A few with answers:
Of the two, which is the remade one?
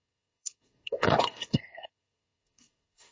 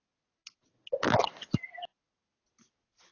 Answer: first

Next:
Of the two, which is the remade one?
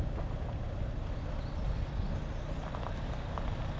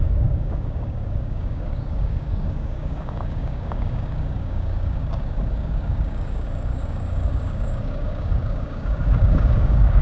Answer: second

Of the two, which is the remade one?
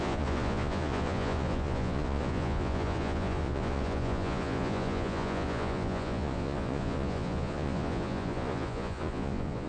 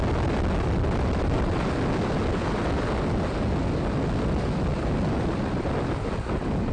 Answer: first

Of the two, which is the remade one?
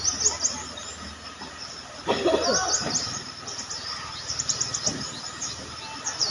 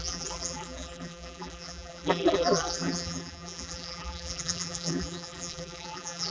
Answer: second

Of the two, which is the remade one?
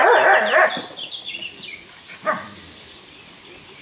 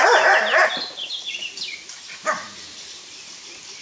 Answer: second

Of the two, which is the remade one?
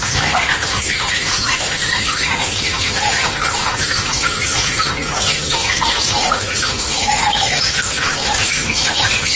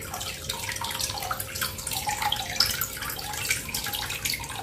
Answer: first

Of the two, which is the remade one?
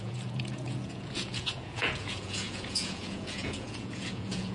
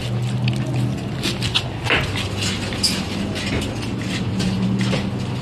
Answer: first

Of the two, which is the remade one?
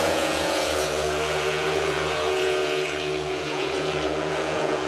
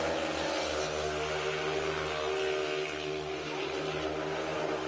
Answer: first